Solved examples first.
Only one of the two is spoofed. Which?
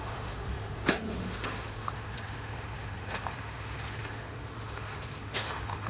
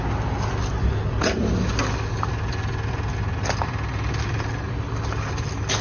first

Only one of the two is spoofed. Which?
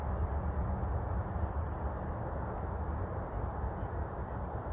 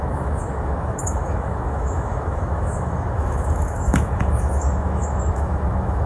second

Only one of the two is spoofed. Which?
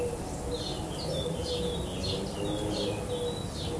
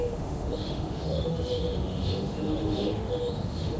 second